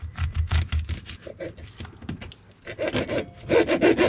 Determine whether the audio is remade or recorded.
recorded